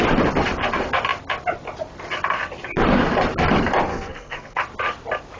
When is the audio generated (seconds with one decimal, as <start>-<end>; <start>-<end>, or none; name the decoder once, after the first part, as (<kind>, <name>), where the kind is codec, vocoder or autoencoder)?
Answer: 3.9-4.6 (codec, SNAC)